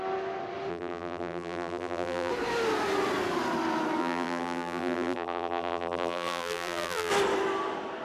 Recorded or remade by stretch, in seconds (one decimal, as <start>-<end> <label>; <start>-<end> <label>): 0.0-0.7 recorded; 0.7-2.3 remade; 2.3-4.0 recorded; 4.0-7.1 remade; 7.1-8.0 recorded